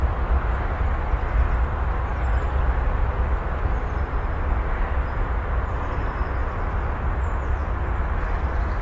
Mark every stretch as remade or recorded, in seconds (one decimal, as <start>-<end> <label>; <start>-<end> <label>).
0.0-8.8 recorded